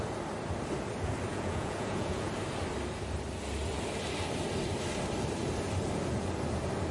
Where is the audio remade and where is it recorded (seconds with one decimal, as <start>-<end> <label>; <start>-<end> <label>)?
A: 0.0-1.3 recorded; 1.3-2.3 remade; 2.3-6.9 recorded